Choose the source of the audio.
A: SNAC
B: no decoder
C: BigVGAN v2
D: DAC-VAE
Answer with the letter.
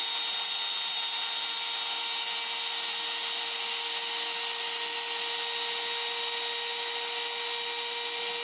B